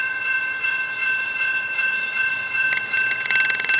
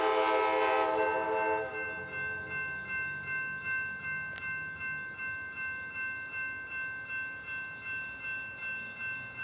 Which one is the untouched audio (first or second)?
second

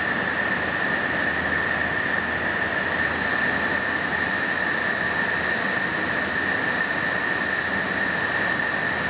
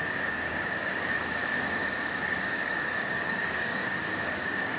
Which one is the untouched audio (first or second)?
first